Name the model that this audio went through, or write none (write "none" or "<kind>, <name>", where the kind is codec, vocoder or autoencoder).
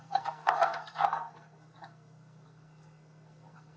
codec, SNAC